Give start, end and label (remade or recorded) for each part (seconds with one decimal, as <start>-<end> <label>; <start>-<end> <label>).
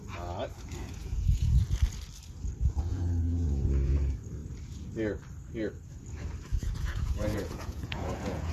0.0-1.0 recorded; 1.0-1.6 remade; 1.6-2.9 recorded; 2.9-3.9 remade; 3.9-6.5 recorded; 6.5-8.5 remade